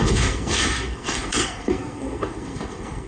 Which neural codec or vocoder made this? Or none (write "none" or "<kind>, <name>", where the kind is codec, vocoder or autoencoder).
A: codec, SNAC